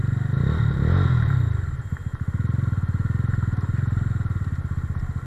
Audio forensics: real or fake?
real